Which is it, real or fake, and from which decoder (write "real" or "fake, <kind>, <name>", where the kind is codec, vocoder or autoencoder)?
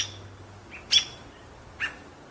real